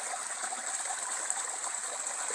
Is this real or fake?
fake